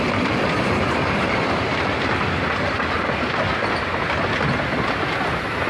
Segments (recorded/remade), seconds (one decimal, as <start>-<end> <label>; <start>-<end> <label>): 0.0-5.7 recorded